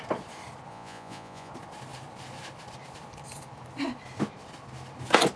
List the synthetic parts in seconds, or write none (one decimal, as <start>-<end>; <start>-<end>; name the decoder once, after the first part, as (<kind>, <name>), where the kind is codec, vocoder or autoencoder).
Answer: 0.7-1.5 (vocoder, Vocos)